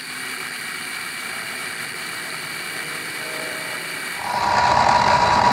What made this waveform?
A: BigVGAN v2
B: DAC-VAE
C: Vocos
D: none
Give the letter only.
A